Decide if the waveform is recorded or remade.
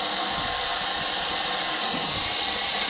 recorded